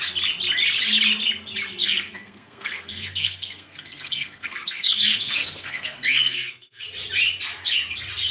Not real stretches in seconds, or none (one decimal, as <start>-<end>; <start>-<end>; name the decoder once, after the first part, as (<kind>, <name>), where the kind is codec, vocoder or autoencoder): 1.8-6.8 (codec, SNAC)

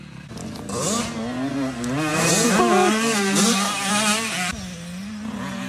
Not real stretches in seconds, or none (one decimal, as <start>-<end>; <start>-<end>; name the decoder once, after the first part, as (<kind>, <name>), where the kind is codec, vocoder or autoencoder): 2.1-4.5 (vocoder, BigVGAN v2)

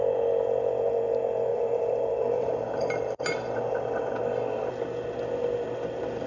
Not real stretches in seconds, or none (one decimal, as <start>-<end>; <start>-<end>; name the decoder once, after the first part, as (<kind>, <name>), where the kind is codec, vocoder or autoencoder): 1.5-4.2 (vocoder, BigVGAN v2)

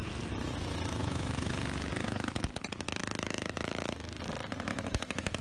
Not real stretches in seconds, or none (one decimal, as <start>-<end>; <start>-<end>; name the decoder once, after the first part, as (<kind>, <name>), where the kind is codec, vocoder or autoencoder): 1.0-1.5 (autoencoder, DAC-VAE); 2.0-2.5; 3.0-3.9; 4.7-5.4

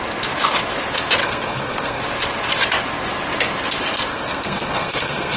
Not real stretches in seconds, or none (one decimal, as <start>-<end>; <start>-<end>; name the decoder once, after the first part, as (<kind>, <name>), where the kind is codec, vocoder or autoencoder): 1.2-2.0 (codec, SNAC); 4.1-5.4

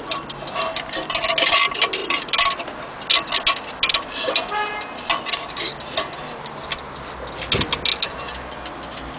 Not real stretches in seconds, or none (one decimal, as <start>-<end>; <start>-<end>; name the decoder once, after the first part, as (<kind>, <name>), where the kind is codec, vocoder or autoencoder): none

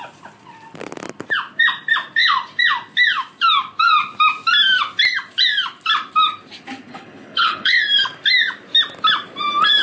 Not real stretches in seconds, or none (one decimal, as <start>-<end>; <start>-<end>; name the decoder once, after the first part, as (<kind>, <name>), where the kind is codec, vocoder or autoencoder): 6.9-7.8 (codec, HILCodec)

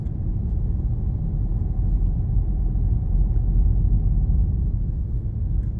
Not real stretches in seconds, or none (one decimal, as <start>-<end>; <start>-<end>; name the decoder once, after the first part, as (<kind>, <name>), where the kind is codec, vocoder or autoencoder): none